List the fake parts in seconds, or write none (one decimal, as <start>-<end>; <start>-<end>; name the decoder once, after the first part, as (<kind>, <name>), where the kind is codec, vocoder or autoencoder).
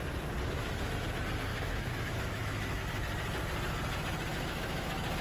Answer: 1.5-2.8 (autoencoder, DAC-VAE); 4.3-5.2